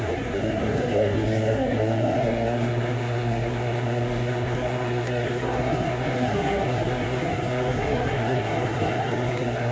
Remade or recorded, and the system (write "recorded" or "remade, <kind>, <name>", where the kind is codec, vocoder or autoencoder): remade, codec, SNAC